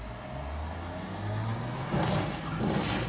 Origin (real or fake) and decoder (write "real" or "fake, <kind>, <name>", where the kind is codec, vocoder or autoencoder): real